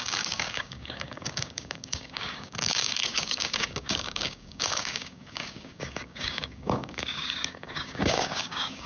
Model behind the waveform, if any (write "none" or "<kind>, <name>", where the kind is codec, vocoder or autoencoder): codec, DAC